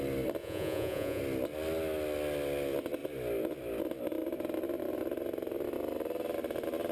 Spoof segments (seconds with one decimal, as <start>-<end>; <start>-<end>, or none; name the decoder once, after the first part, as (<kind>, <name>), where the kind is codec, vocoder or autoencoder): 0.4-1.2 (vocoder, Vocos)

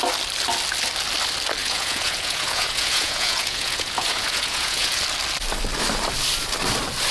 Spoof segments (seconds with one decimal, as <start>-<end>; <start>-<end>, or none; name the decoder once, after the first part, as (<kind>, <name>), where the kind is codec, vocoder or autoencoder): 1.6-5.0 (vocoder, Vocos)

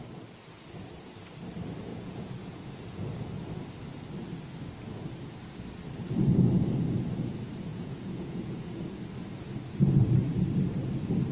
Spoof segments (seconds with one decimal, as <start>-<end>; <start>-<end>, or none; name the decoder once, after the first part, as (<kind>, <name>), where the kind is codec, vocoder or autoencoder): 1.9-3.0 (vocoder, Vocos); 7.7-9.0

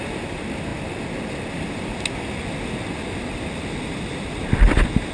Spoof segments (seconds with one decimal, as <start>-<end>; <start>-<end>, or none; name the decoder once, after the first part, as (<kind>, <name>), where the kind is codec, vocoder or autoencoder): none

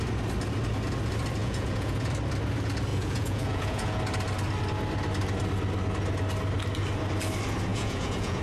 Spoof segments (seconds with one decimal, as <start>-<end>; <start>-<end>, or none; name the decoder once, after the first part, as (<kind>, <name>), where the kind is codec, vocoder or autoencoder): 1.4-2.1 (vocoder, Vocos); 2.9-4.0; 7.7-8.4

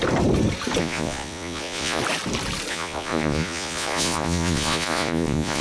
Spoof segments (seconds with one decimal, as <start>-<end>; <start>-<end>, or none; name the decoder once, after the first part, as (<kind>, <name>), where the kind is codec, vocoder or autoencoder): 0.8-2.0 (vocoder, Vocos); 2.7-5.6

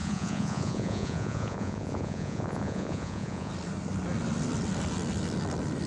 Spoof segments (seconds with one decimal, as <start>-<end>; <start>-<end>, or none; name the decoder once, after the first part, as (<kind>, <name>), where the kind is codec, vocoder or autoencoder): 0.0-3.5 (vocoder, Vocos)

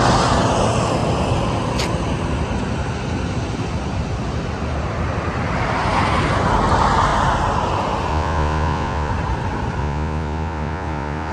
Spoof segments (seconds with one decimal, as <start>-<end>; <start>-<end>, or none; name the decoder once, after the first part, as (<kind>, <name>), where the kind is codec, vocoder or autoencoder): 8.1-9.1 (vocoder, Vocos); 9.8-11.3